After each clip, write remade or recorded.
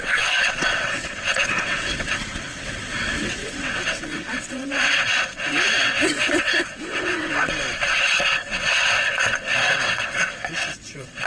remade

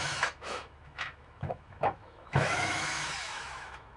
remade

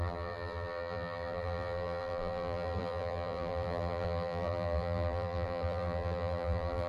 remade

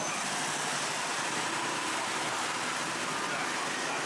recorded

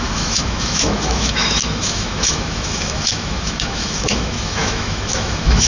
remade